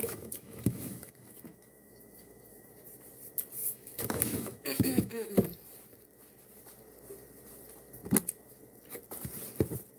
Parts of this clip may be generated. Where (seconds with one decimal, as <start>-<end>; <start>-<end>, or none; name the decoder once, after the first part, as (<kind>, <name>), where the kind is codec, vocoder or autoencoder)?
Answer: 0.0-2.7 (autoencoder, DAC-VAE); 3.6-5.3